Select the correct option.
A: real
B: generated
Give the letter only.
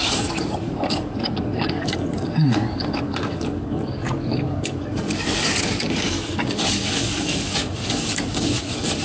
B